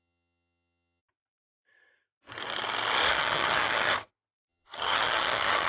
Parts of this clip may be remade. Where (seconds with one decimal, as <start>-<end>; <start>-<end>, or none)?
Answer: 0.0-1.0; 3.1-3.9; 4.5-5.7